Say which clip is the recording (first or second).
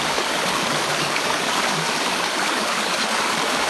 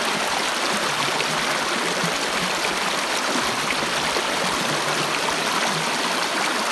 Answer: second